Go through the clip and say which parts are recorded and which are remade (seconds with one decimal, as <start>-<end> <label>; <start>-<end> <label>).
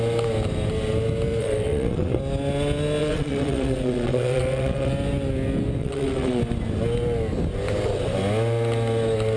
0.0-1.4 recorded; 1.4-2.2 remade; 2.2-3.0 recorded; 3.0-4.9 remade; 4.9-5.8 recorded; 5.8-6.4 remade; 6.4-9.4 recorded